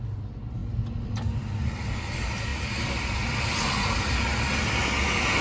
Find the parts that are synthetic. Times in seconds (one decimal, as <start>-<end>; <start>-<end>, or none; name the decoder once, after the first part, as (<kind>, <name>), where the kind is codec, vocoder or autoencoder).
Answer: none